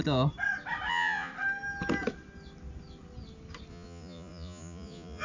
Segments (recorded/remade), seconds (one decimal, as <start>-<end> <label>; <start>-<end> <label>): 0.0-0.9 recorded; 0.9-1.3 remade; 1.3-3.7 recorded; 3.7-5.2 remade